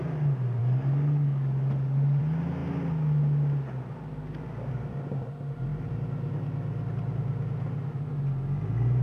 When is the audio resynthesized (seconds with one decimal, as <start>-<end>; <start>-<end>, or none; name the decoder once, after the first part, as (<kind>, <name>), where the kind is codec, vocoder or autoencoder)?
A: 0.6-2.2 (codec, DAC)